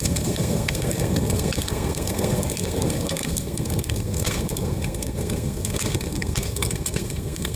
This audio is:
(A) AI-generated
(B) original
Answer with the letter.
A